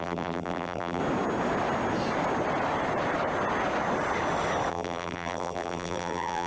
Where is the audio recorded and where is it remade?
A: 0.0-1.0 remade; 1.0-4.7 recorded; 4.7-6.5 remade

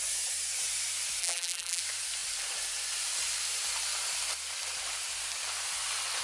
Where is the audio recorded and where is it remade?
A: 0.0-1.2 recorded; 1.2-1.8 remade; 1.8-6.2 recorded

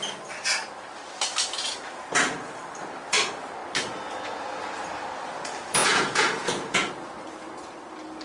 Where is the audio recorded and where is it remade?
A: 0.0-5.8 recorded; 5.8-6.9 remade; 6.9-8.2 recorded

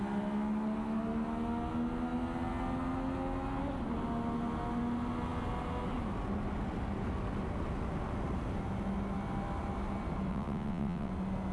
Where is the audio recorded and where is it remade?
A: 0.0-10.3 recorded; 10.3-11.1 remade; 11.1-11.5 recorded